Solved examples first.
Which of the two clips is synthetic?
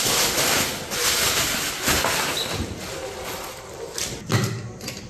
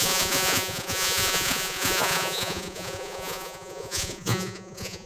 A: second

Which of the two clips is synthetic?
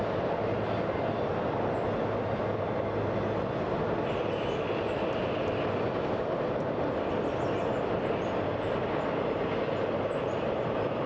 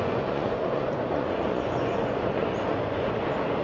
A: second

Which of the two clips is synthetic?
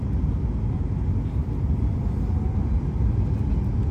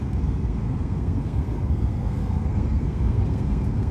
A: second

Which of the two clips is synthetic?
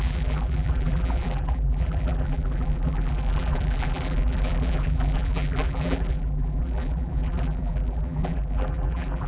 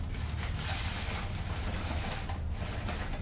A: first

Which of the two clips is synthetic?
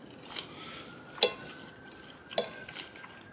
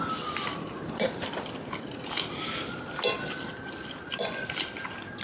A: second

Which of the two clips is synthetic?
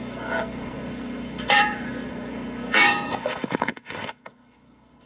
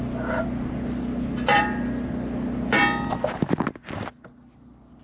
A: first